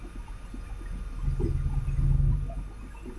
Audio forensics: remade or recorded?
recorded